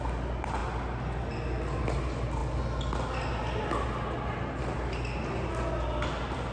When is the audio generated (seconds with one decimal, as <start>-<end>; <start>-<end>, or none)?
none